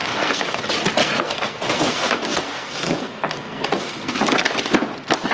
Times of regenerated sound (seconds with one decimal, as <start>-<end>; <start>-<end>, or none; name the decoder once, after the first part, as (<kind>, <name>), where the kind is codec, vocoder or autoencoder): 0.0-0.6 (codec, SNAC); 1.0-4.2